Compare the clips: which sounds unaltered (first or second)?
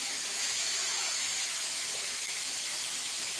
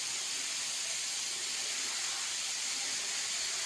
second